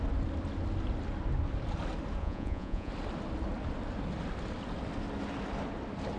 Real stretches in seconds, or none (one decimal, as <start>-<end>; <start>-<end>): 0.0-2.2; 2.9-6.2